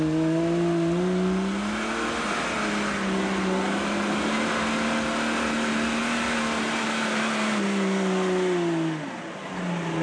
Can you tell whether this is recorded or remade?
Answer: recorded